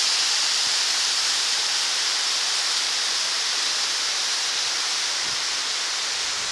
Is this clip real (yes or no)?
yes